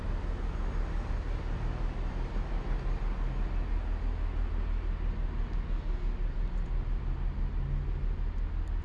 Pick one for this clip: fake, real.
real